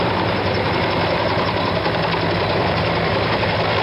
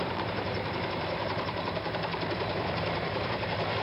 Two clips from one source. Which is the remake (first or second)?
second